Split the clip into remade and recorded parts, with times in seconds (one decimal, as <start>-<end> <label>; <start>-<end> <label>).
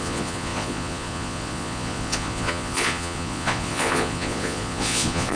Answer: 0.0-5.4 remade